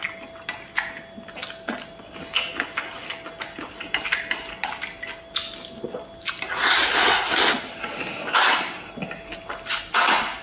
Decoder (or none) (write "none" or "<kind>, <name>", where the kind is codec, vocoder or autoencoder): none